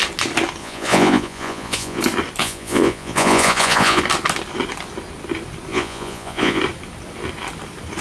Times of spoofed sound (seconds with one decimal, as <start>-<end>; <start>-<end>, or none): 0.6-2.0; 2.4-4.0; 5.7-6.6